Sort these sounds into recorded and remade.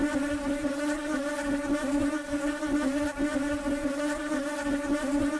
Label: recorded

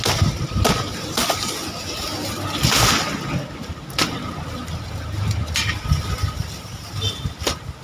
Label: recorded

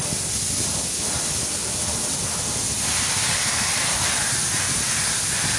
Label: recorded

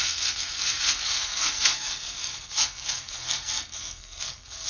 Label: remade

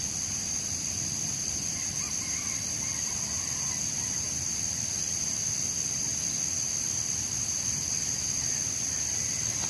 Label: recorded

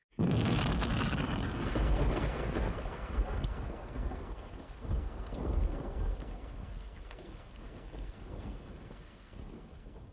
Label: remade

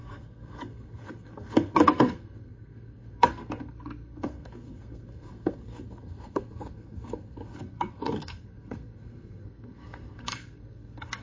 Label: remade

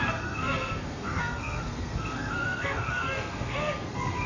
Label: remade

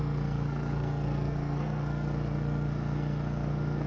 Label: remade